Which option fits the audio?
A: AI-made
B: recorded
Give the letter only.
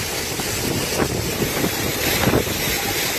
B